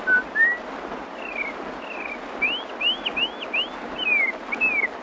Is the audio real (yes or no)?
yes